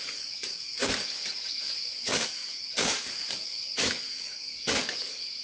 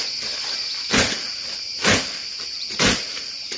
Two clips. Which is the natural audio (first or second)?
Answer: second